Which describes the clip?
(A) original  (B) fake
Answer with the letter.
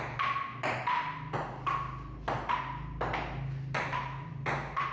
A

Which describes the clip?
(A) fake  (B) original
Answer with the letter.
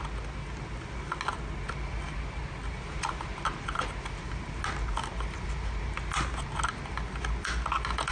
B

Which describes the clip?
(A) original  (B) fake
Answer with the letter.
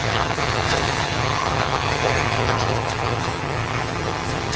B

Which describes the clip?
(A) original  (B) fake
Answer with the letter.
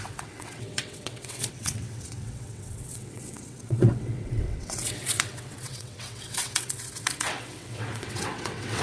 B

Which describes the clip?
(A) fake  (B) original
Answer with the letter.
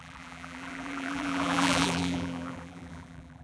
A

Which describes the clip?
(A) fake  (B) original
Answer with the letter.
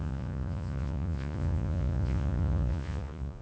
A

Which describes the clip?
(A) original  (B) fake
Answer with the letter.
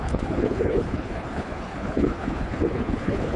B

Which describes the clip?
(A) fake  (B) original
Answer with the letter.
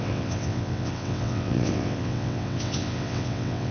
A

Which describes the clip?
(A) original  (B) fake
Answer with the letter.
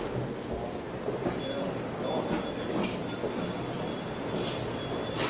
A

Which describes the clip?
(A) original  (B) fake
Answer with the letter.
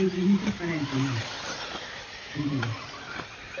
A